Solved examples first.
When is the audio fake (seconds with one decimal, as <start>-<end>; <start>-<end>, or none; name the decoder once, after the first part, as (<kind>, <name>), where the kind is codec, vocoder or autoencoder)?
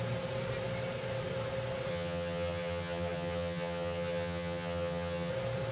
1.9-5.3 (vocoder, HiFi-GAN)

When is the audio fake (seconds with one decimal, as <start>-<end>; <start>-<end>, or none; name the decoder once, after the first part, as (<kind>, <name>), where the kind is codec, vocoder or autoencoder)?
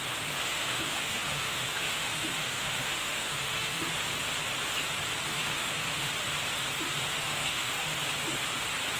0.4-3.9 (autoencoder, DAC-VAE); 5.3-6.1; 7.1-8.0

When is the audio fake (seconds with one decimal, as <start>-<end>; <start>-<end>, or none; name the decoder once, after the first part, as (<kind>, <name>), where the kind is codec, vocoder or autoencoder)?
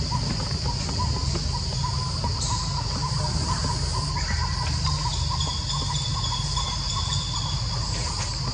none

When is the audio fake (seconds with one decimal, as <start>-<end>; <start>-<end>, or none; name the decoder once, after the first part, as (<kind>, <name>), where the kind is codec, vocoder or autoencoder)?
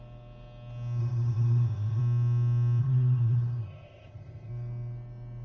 1.0-2.0 (codec, ZipCodec); 2.8-4.5